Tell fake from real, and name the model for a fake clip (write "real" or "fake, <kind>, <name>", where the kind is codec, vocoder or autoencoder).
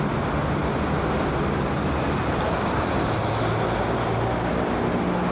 real